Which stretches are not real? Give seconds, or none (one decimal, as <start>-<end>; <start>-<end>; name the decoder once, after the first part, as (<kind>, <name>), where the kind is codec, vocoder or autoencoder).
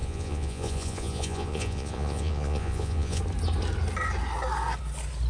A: 0.0-3.2 (vocoder, Vocos)